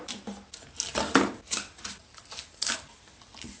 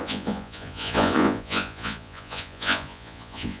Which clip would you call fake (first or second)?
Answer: second